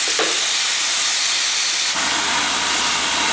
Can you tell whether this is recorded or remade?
recorded